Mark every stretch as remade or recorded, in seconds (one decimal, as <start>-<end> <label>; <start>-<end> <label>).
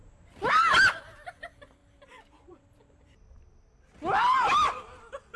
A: 0.0-0.5 remade; 0.5-1.8 recorded; 1.8-5.0 remade; 5.0-5.4 recorded